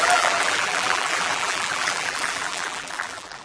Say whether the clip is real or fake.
fake